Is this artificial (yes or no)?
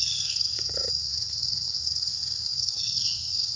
yes